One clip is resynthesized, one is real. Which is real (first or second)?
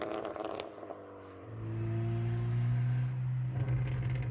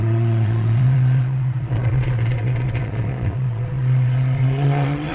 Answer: first